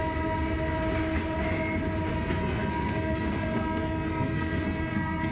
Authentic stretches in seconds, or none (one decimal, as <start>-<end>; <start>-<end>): 0.0-2.1